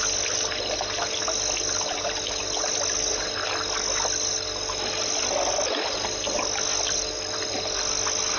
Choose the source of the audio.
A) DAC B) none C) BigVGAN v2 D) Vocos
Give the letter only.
C